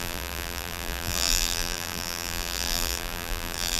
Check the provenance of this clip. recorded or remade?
remade